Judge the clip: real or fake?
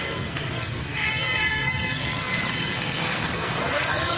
fake